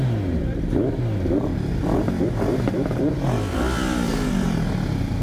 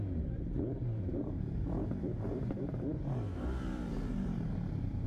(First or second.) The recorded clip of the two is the first